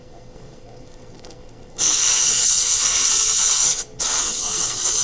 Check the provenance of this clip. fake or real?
fake